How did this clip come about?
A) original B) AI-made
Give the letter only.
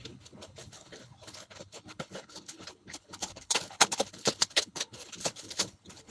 B